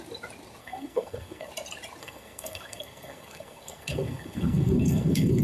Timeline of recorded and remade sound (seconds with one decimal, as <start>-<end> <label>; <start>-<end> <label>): 0.0-0.6 recorded; 0.6-1.5 remade; 1.5-2.0 recorded; 2.0-5.4 remade